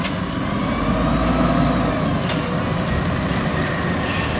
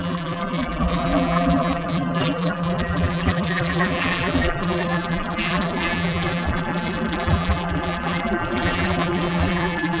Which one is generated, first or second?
second